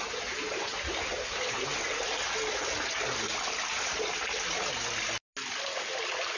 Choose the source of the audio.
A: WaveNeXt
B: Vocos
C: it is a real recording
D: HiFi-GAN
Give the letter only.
C